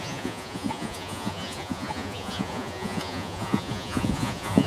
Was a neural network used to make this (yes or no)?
yes